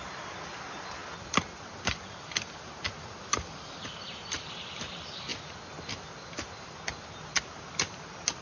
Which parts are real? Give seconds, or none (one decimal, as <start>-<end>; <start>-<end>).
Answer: 0.0-8.4